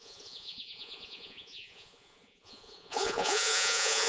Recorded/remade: remade